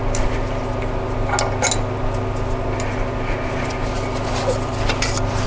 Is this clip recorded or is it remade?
recorded